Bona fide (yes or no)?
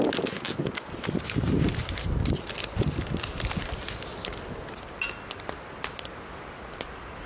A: yes